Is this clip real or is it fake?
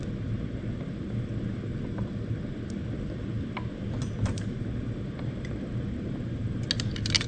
real